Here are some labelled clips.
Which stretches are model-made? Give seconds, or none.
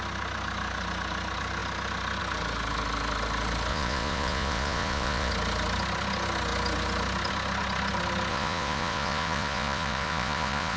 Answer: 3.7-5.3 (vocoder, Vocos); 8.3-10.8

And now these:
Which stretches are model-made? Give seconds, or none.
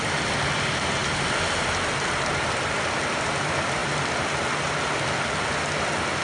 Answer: none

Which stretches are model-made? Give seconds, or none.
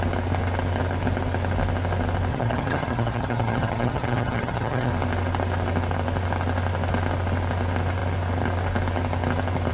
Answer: 2.3-4.9 (vocoder, HiFi-GAN)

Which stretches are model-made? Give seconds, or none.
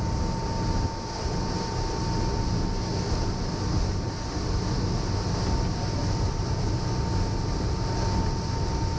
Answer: none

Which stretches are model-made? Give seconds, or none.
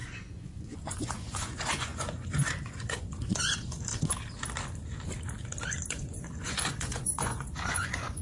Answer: 0.0-3.9 (vocoder, Vocos); 5.9-8.2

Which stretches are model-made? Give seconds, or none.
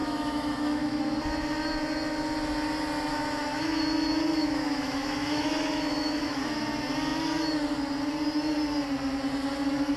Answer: 0.0-1.0 (autoencoder, DAC-VAE); 3.1-3.8; 4.4-6.6